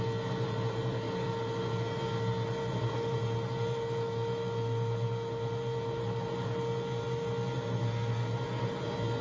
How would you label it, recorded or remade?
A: recorded